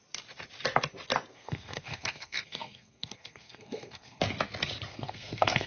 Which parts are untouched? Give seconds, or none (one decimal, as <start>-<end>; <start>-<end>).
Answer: 0.0-1.3; 4.2-4.9